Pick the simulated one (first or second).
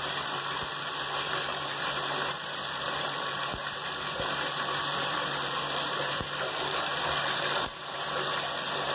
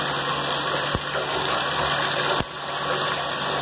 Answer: first